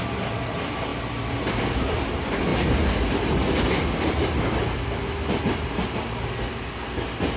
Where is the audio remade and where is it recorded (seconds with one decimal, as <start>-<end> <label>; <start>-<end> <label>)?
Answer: 0.0-7.4 recorded